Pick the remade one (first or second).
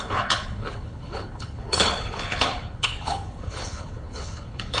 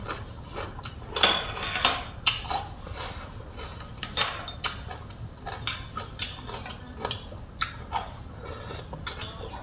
first